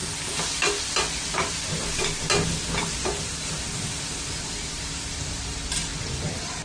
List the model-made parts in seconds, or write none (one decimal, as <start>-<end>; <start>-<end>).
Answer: 5.9-6.6